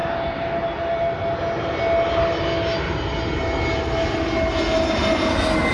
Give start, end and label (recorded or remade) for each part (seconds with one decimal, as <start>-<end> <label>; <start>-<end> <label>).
0.0-5.7 recorded